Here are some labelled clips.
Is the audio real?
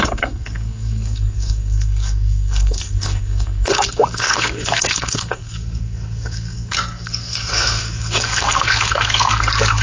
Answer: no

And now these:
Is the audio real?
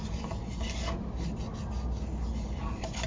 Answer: yes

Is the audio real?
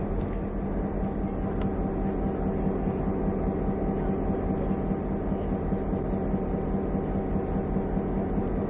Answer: yes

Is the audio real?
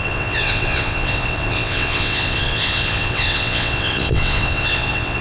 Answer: no